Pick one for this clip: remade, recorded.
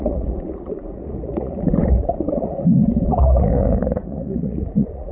remade